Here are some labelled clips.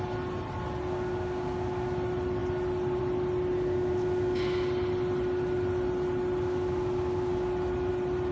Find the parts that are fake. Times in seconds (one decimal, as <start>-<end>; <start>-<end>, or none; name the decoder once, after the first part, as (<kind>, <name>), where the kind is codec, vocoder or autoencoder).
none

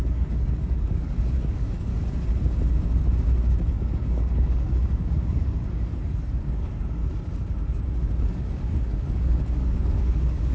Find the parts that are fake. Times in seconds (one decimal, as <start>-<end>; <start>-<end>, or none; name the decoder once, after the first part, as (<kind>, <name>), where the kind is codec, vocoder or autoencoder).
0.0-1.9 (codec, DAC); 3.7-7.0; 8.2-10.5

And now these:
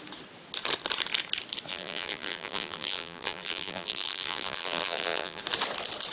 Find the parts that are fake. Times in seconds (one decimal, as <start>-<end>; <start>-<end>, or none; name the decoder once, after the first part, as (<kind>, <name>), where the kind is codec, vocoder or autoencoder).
1.7-5.4 (vocoder, BigVGAN v2)

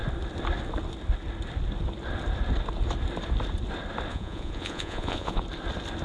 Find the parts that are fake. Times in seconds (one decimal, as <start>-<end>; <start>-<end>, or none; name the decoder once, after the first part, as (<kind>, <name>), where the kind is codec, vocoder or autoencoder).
4.1-5.4 (vocoder, Vocos)

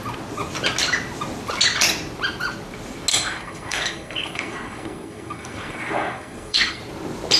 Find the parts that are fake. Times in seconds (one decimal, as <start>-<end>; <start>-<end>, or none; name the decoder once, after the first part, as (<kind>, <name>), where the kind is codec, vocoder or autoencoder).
3.1-6.8 (codec, SNAC)

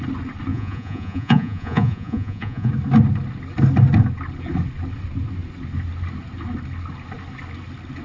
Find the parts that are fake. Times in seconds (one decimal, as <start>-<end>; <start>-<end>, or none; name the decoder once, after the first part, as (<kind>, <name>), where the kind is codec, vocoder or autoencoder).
0.5-2.7 (vocoder, Vocos)